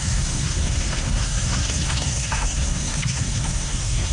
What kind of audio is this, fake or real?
fake